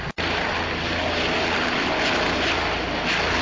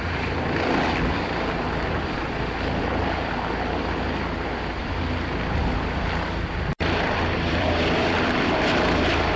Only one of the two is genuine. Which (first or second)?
first